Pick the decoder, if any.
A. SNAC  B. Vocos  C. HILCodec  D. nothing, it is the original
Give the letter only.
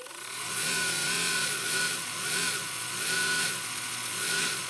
B